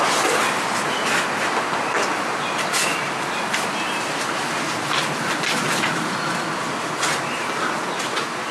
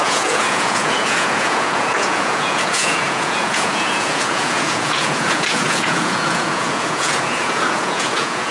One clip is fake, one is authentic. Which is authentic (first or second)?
first